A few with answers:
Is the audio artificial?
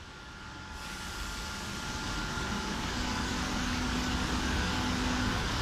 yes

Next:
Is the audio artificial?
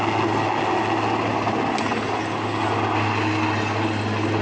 no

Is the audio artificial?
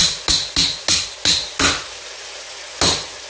no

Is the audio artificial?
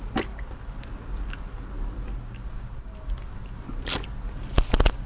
no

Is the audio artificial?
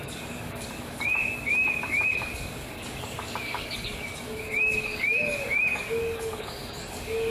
yes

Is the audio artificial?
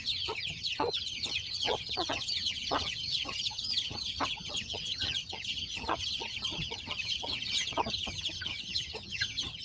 yes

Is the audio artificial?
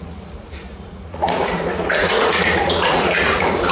yes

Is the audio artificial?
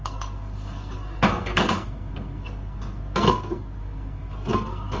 yes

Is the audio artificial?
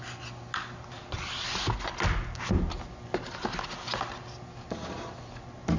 no